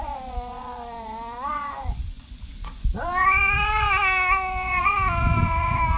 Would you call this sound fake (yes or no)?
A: yes